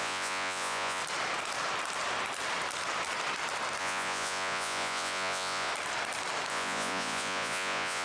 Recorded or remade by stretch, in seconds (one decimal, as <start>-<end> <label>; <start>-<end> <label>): 0.0-1.0 remade; 1.0-3.8 recorded; 3.8-5.7 remade; 5.7-6.5 recorded; 6.5-8.0 remade